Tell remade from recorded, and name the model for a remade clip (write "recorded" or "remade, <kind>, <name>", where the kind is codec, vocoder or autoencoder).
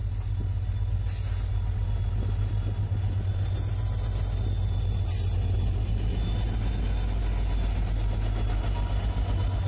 recorded